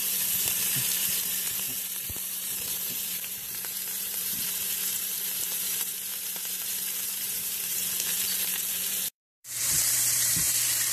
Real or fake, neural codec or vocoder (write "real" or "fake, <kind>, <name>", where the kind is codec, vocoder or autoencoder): fake, vocoder, BigVGAN v2